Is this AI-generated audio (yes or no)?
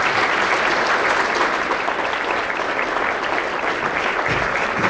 no